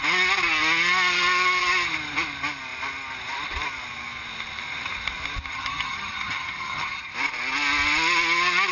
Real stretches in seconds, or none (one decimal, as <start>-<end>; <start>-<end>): 0.0-5.5; 7.1-8.7